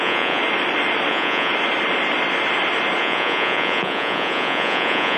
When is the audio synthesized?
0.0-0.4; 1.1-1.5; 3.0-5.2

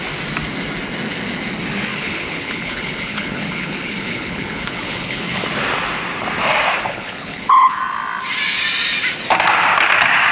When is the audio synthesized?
1.9-5.4; 6.9-7.8

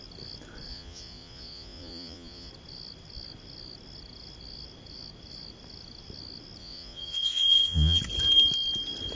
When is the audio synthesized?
0.7-2.5; 6.6-8.0

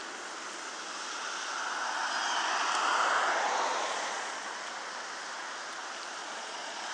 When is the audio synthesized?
3.7-4.5; 6.2-6.9

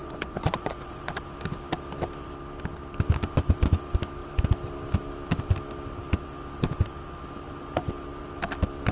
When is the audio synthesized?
0.0-1.1